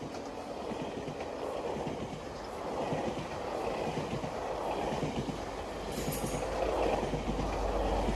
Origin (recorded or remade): recorded